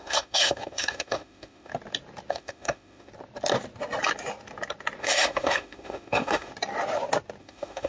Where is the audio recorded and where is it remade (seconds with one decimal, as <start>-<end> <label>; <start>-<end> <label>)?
0.0-1.7 remade; 1.7-2.3 recorded; 2.3-3.1 remade; 3.1-5.0 recorded; 5.0-6.5 remade; 6.5-7.4 recorded; 7.4-7.9 remade